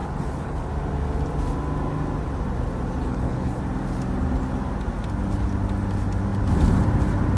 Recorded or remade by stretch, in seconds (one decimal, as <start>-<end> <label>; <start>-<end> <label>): 0.0-0.7 remade; 0.7-3.0 recorded; 3.0-3.6 remade; 3.6-7.4 recorded

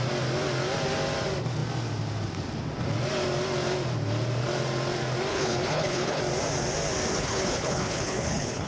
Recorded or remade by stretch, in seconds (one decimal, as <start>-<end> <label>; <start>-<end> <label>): 0.0-5.3 recorded; 5.3-6.2 remade; 6.2-7.1 recorded; 7.1-8.7 remade

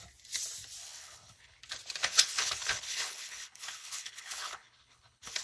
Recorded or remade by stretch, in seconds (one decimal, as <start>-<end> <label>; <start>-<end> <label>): 0.0-0.8 recorded; 0.8-1.6 remade; 1.6-2.0 recorded; 2.0-5.4 remade